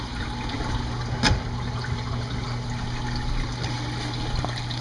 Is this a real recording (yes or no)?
yes